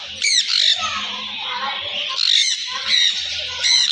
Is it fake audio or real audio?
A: fake